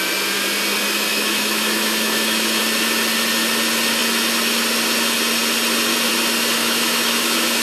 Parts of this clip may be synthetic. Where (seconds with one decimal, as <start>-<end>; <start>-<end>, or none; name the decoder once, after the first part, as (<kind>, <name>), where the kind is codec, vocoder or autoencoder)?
1.1-2.6 (autoencoder, DAC-VAE); 6.6-7.6